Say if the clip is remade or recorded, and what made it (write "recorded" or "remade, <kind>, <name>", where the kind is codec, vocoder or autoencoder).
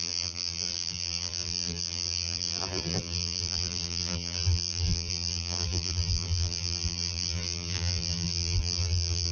remade, vocoder, BigVGAN v2